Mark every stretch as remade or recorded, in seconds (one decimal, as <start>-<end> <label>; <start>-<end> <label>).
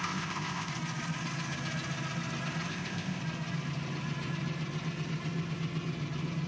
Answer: 0.0-0.7 remade; 0.7-2.7 recorded; 2.7-3.2 remade; 3.2-6.5 recorded